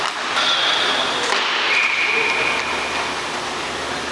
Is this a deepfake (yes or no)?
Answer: no